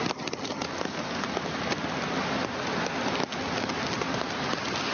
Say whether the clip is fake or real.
real